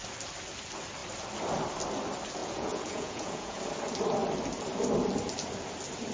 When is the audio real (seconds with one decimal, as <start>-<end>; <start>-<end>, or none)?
0.0-2.4; 3.6-6.1